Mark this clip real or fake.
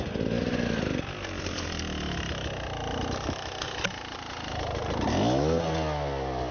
real